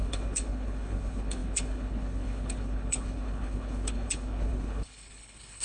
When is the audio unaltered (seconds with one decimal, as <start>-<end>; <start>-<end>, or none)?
none

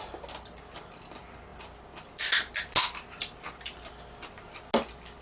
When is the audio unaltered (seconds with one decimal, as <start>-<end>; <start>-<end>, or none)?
0.0-5.2

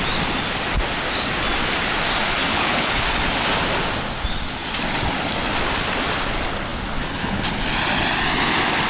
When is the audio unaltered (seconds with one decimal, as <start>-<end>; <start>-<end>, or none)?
0.0-2.5; 3.0-8.9

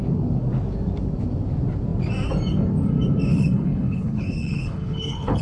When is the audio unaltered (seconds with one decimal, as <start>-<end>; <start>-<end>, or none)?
0.0-3.3